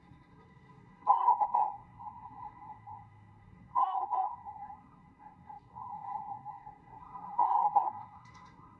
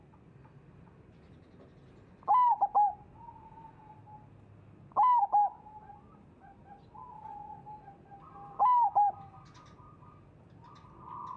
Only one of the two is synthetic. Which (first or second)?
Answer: first